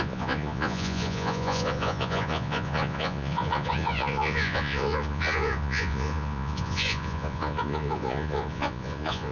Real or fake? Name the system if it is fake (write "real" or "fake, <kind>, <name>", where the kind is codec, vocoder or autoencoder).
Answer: fake, vocoder, Vocos